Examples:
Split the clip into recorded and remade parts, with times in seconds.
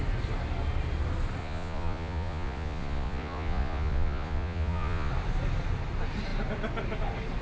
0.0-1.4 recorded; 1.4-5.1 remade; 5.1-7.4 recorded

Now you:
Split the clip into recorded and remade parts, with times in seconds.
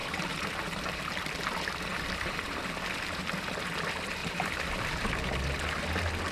0.0-1.0 remade; 1.0-1.9 recorded; 1.9-3.2 remade; 3.2-4.2 recorded; 4.2-5.1 remade; 5.1-6.3 recorded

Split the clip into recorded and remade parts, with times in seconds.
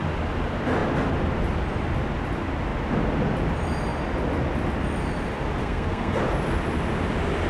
0.0-5.6 recorded; 5.6-6.2 remade; 6.2-7.5 recorded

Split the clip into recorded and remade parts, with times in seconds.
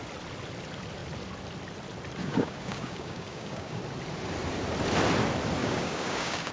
0.0-2.2 recorded; 2.2-3.8 remade; 3.8-5.6 recorded; 5.6-6.5 remade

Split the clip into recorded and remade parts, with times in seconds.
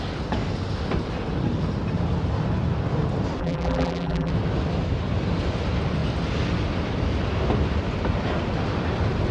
0.0-3.4 recorded; 3.4-4.3 remade; 4.3-9.3 recorded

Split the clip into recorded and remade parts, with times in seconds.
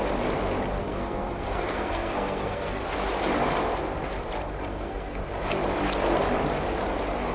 0.0-0.8 recorded; 0.8-2.8 remade; 2.8-4.7 recorded; 4.7-5.2 remade; 5.2-7.3 recorded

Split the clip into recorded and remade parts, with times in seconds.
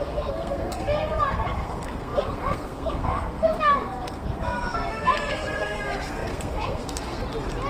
0.0-7.2 remade; 7.2-7.7 recorded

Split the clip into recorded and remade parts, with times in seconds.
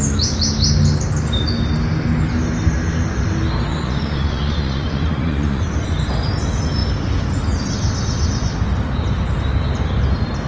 0.0-3.7 recorded; 3.7-5.6 remade; 5.6-10.5 recorded